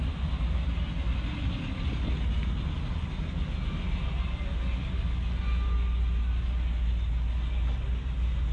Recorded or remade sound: recorded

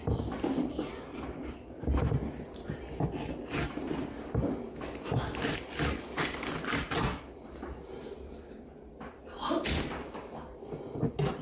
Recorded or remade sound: recorded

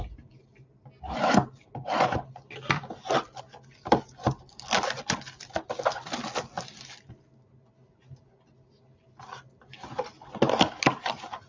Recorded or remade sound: recorded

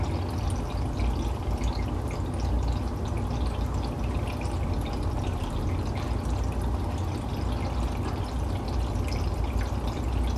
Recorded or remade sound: recorded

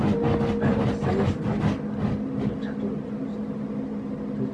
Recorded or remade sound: recorded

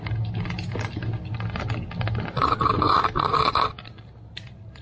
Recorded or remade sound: recorded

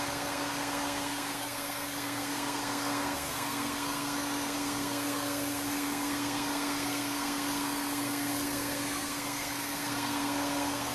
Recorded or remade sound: remade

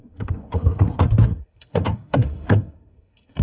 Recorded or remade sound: remade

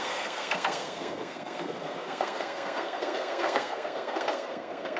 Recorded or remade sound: remade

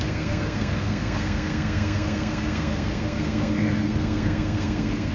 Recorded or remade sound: remade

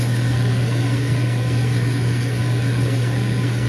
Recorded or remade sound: remade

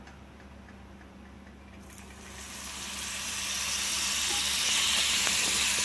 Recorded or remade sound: recorded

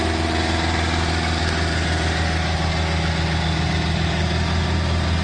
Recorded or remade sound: recorded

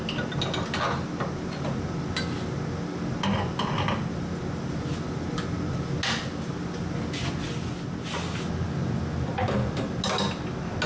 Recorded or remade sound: recorded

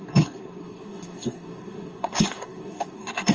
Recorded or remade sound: remade